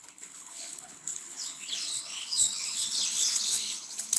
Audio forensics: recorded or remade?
remade